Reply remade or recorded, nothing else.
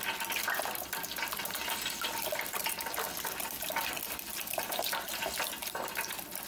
recorded